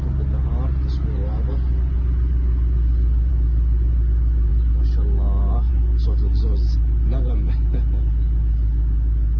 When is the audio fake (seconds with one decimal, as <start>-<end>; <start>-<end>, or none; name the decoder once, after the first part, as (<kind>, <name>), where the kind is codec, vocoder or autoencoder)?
none